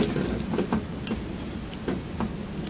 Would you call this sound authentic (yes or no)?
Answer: yes